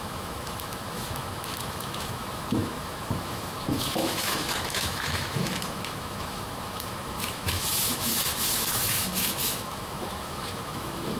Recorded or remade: remade